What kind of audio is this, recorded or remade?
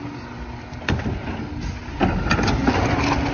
recorded